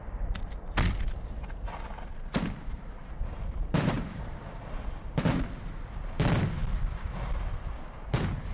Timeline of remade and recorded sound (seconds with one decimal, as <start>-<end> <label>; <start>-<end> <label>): 0.0-3.0 recorded; 3.0-4.9 remade; 4.9-8.5 recorded